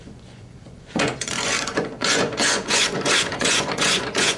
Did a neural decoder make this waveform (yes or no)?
yes